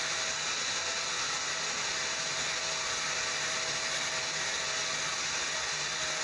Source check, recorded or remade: recorded